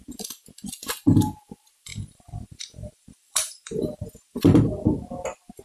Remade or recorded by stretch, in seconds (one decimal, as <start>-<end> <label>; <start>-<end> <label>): 0.0-1.9 recorded; 1.9-4.4 remade; 4.4-5.6 recorded